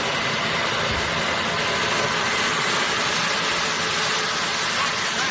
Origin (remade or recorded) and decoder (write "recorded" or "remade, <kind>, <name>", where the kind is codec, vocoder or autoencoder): recorded